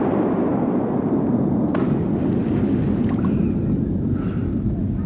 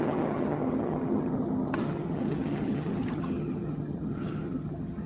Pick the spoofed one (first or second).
second